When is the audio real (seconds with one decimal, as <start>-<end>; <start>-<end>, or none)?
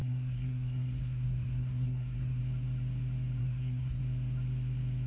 2.4-3.4; 4.0-5.1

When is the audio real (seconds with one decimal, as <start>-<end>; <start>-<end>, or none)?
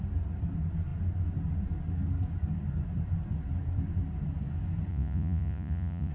0.0-4.9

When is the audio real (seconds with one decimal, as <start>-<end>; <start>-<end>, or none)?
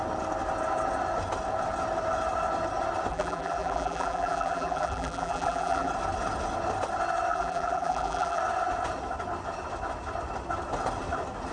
0.0-3.1; 5.9-7.3; 8.4-11.5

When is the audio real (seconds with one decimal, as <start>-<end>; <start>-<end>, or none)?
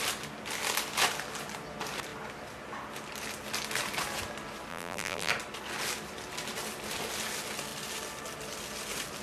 0.0-4.7; 5.3-9.2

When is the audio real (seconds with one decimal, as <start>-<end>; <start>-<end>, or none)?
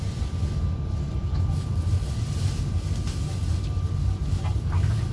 0.0-5.1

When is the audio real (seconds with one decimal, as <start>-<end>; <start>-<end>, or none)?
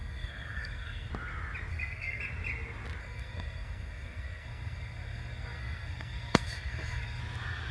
1.1-1.7; 2.2-3.0; 7.2-7.7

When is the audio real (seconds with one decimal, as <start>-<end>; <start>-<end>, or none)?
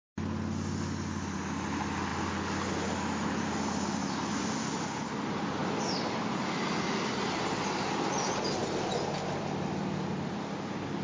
0.0-11.0